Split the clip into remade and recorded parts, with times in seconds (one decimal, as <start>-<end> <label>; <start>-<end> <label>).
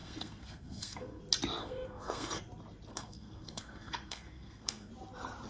0.0-1.2 remade; 1.2-1.6 recorded; 1.6-2.4 remade; 2.4-2.9 recorded; 2.9-4.9 remade; 4.9-5.5 recorded